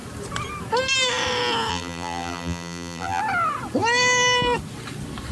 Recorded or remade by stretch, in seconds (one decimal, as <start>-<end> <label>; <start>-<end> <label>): 0.0-1.7 recorded; 1.7-3.2 remade; 3.2-5.3 recorded